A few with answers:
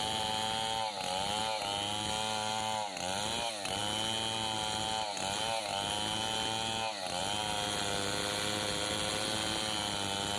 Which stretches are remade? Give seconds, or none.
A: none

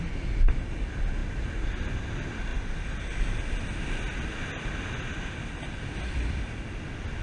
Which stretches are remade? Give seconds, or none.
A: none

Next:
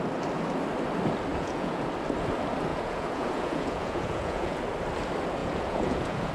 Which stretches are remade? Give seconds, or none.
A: 1.3-1.9 (vocoder, Vocos); 2.7-4.6; 5.4-6.3

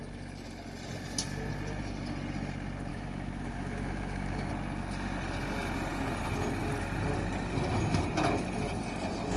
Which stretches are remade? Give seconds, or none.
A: 2.9-4.5 (autoencoder, DAC-VAE)

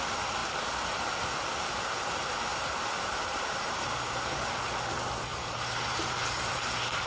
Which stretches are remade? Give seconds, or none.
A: 2.5-4.7 (vocoder, BigVGAN v2); 5.3-6.6

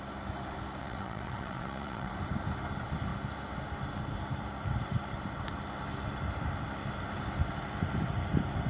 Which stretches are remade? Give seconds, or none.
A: 0.8-2.1 (vocoder, WaveNeXt)

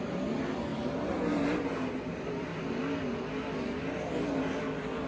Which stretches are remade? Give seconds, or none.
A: none

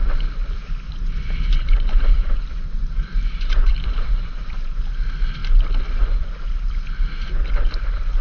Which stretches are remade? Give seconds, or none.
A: 0.4-4.8 (vocoder, BigVGAN v2)